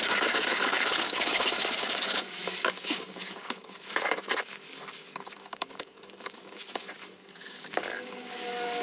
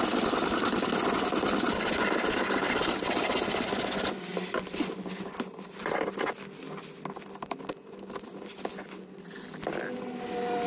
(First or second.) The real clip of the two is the second